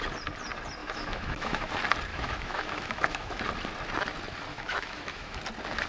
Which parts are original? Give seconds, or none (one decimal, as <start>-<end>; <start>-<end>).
0.0-0.8; 1.7-2.1; 3.4-4.5; 5.4-5.9